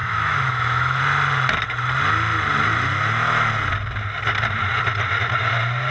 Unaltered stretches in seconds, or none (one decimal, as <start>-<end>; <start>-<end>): 1.0-5.9